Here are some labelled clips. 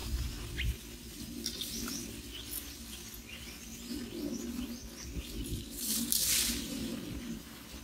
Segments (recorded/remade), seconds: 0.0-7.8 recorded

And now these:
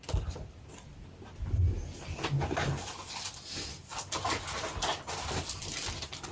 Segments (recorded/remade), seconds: 0.0-6.3 recorded

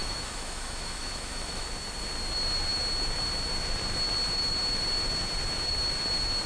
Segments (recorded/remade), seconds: 0.0-1.7 remade; 1.7-6.5 recorded